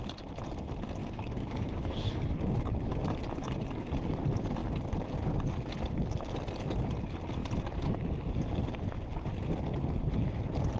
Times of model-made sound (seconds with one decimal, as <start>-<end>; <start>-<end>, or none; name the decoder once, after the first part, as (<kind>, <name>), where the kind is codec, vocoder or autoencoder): 1.0-2.3 (codec, DAC)

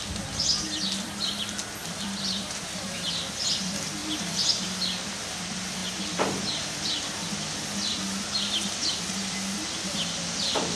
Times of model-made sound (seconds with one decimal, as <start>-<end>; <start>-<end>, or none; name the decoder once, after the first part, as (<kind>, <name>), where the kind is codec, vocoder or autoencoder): 1.8-2.6 (vocoder, BigVGAN v2); 4.0-4.6

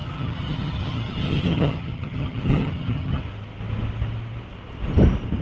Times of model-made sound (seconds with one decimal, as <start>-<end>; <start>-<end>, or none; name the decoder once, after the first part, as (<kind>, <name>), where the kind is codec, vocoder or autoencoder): 0.0-3.2 (vocoder, HiFi-GAN)